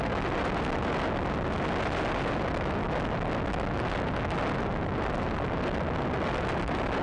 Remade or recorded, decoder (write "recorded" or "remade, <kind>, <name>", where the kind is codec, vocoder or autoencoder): recorded